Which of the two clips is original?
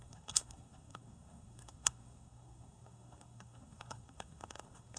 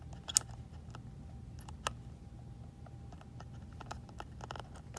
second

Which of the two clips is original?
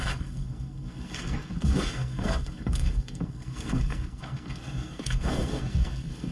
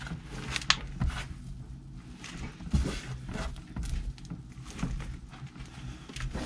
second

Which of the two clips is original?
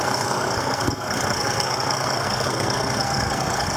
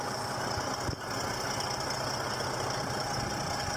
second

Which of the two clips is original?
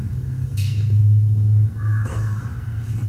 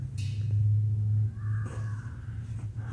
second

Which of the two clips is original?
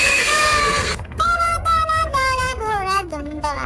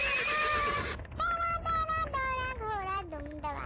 second